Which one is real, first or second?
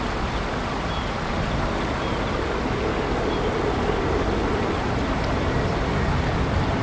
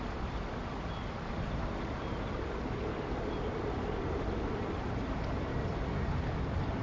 first